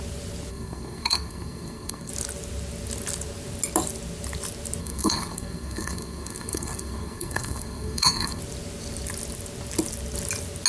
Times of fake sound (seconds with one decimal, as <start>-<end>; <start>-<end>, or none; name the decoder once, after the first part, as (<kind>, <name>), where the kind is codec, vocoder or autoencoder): 0.5-2.1 (codec, SNAC); 4.8-8.4